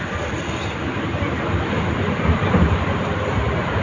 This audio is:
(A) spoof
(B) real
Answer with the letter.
A